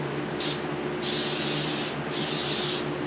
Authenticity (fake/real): real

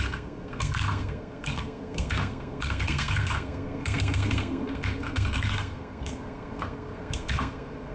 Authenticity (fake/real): fake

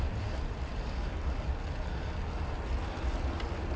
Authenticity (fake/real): real